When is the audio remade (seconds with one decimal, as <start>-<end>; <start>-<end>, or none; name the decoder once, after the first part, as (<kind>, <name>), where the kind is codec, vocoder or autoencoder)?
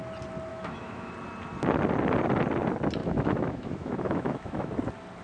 0.5-1.1 (autoencoder, DAC-VAE); 3.0-4.7